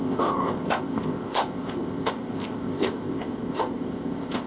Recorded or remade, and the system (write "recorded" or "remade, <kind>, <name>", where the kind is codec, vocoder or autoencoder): remade, codec, ZipCodec